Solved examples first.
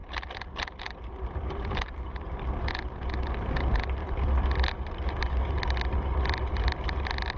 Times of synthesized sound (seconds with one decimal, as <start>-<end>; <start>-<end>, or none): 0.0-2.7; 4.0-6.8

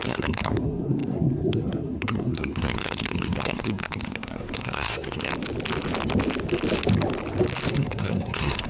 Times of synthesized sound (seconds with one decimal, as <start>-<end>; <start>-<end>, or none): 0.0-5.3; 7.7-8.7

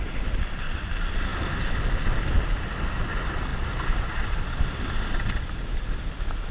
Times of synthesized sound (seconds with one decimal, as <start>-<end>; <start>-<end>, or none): none

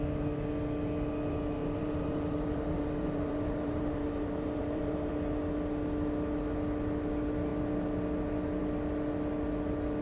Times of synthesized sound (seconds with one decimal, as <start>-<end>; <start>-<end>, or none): 1.6-5.1